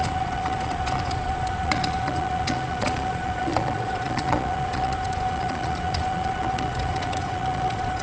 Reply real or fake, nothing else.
fake